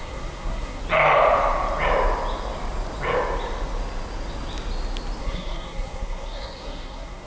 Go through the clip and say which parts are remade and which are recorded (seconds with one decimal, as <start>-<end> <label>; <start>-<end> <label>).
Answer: 0.0-0.8 remade; 0.8-5.2 recorded; 5.2-7.3 remade